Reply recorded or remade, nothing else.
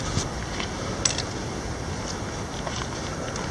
recorded